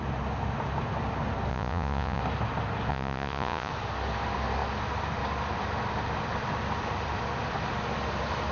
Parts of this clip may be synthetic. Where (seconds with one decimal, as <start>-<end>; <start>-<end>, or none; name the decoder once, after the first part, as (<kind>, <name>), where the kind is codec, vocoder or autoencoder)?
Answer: 1.5-2.2 (vocoder, Vocos); 2.9-3.7